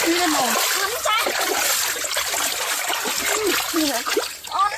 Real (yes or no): yes